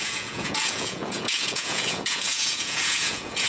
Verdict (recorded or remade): remade